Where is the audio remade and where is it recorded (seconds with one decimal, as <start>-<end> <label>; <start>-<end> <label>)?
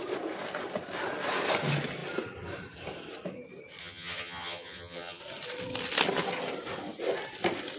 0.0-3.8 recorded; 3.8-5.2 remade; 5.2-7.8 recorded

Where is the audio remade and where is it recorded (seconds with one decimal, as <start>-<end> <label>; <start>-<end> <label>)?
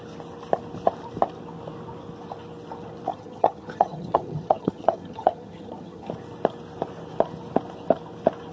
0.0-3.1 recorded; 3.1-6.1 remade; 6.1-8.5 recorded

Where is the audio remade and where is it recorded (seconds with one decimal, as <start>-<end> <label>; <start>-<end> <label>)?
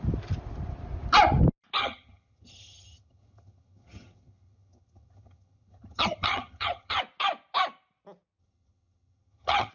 0.0-1.8 recorded; 1.8-7.0 remade; 7.0-8.4 recorded; 8.4-9.7 remade